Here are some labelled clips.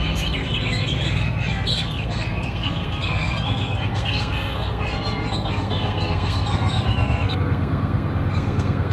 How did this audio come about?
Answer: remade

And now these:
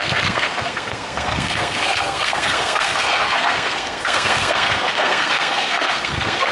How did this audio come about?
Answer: remade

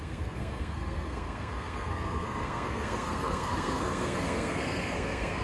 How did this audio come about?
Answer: remade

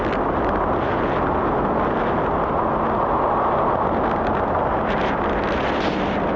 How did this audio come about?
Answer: recorded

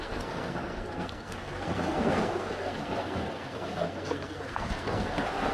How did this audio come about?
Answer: remade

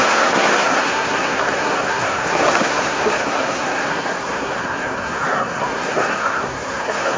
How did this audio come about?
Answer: remade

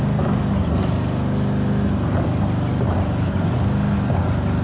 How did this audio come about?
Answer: recorded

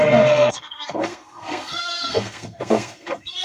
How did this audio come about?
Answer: remade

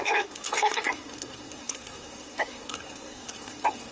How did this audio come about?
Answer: remade